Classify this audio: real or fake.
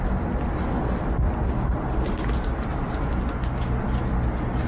real